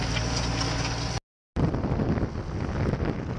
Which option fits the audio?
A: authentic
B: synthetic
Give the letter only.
A